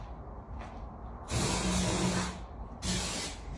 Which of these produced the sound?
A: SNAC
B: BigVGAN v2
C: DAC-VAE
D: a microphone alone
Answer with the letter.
D